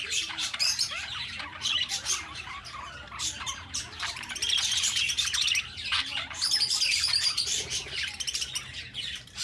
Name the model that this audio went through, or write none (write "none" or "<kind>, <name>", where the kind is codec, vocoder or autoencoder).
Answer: vocoder, BigVGAN v2